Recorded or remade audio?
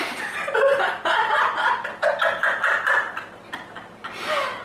recorded